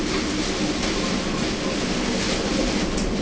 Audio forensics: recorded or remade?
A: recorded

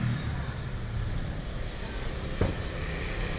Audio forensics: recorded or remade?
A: recorded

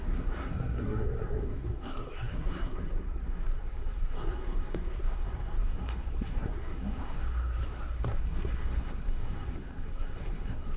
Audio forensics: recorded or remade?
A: remade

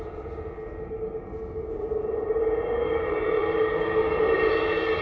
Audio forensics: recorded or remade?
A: remade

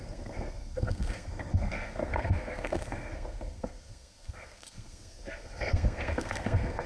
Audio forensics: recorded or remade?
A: remade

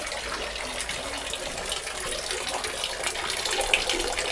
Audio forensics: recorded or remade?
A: recorded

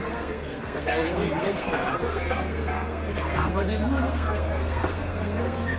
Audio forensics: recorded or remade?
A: remade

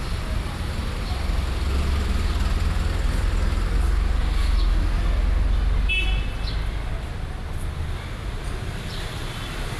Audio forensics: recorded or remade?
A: recorded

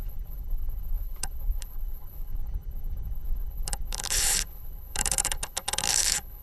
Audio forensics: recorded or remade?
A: remade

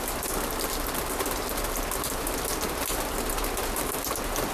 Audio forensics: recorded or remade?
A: recorded